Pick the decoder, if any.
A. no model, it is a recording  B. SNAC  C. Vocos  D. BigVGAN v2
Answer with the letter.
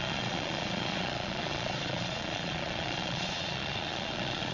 C